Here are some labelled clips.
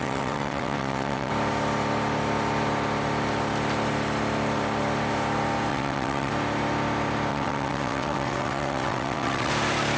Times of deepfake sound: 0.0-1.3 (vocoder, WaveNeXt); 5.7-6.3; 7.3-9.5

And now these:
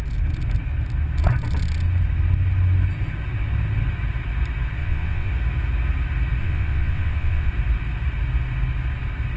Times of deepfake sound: 4.8-5.3 (vocoder, WaveNeXt); 6.4-7.5